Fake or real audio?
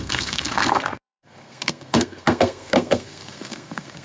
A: fake